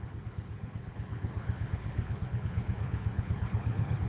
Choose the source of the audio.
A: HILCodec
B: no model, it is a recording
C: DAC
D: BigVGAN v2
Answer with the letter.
A